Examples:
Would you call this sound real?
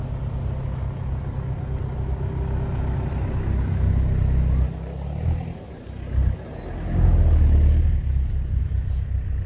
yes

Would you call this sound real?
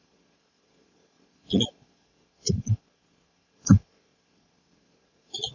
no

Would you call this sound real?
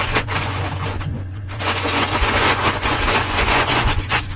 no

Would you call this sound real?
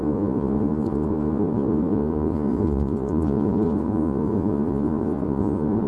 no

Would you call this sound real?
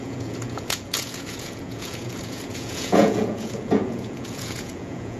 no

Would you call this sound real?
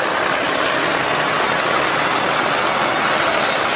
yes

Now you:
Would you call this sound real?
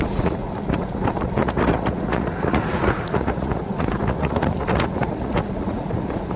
no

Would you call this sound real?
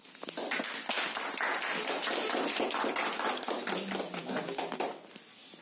yes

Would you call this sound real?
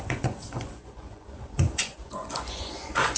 no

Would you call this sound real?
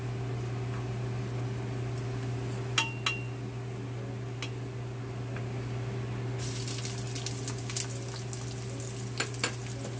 yes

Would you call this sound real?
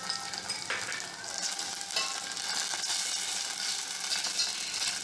yes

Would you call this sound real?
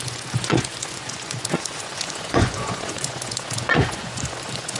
no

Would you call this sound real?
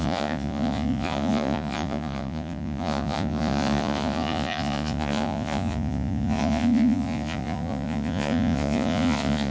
no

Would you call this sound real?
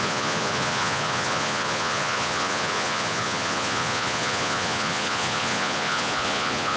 no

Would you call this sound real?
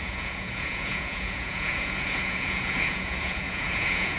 no